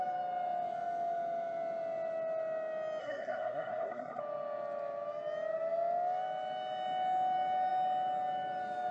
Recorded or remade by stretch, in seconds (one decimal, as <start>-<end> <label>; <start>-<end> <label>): 0.0-3.0 recorded; 3.0-4.2 remade; 4.2-8.9 recorded